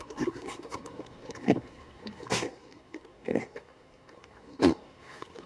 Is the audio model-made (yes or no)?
yes